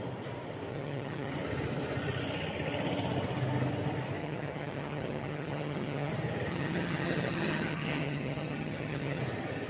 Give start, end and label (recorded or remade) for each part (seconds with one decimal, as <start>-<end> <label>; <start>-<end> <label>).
0.0-0.7 recorded; 0.7-1.3 remade; 1.3-4.2 recorded; 4.2-6.1 remade; 6.1-6.5 recorded; 6.5-9.2 remade; 9.2-9.7 recorded

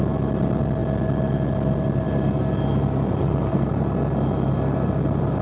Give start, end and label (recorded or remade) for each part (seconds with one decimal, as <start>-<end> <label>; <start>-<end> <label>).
0.0-3.2 recorded; 3.2-3.7 remade; 3.7-5.4 recorded